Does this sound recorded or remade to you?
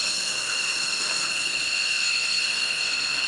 remade